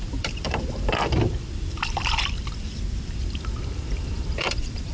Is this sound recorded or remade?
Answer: remade